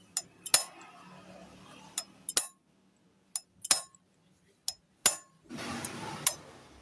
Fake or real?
real